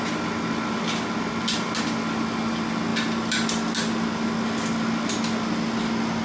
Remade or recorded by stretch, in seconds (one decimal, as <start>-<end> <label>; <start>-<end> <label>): 0.0-6.2 recorded